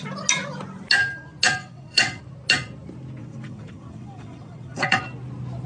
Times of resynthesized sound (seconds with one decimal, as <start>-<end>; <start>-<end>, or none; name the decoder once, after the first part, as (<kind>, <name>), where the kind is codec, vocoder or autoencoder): 1.6-2.2 (vocoder, WaveNeXt); 3.2-5.0